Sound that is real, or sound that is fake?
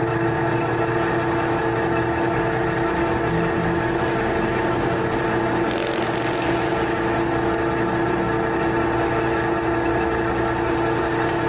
real